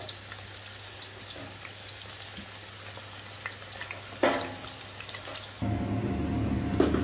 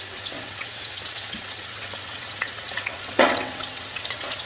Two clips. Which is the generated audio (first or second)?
second